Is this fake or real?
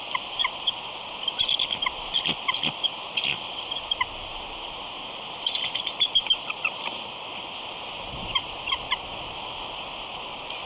real